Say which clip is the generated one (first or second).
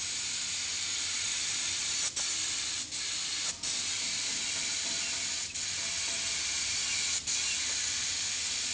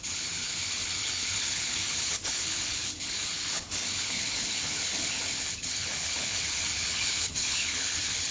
second